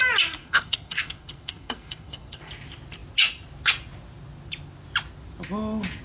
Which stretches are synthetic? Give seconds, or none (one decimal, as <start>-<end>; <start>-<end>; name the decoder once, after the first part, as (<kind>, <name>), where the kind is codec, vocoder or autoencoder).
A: 0.4-2.5 (codec, SNAC)